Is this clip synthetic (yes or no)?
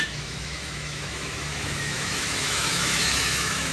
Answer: yes